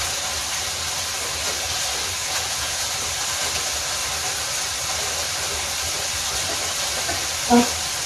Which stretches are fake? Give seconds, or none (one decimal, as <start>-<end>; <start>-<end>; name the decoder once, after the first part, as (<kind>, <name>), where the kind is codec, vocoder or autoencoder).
2.2-2.9 (vocoder, Vocos)